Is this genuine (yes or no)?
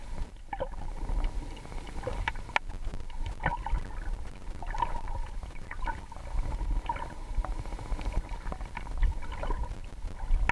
yes